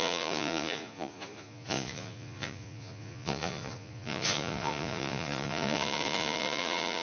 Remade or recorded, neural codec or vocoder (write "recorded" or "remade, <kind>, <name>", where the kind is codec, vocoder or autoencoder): remade, vocoder, Vocos